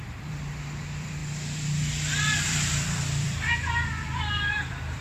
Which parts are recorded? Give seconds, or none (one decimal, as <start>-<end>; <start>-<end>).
none